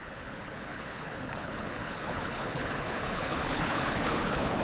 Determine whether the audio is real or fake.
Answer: fake